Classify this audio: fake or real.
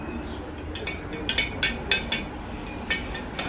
real